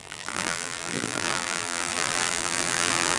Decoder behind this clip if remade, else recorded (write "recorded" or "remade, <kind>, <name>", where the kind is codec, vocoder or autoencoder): remade, vocoder, BigVGAN v2